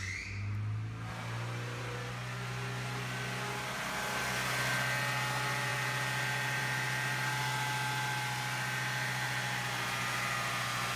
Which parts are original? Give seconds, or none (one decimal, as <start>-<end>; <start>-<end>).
0.0-11.0